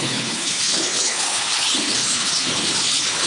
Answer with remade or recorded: remade